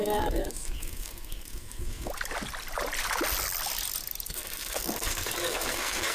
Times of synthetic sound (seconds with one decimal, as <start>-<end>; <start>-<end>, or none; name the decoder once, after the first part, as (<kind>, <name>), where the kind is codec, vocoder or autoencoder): 0.0-2.1 (codec, SNAC); 4.3-6.1